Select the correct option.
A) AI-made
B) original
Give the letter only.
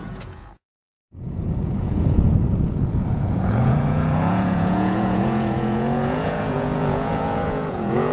A